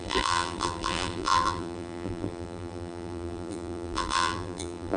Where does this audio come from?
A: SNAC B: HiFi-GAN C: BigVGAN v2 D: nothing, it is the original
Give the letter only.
C